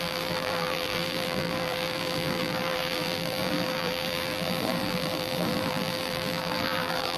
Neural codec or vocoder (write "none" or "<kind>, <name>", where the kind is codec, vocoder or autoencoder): vocoder, BigVGAN v2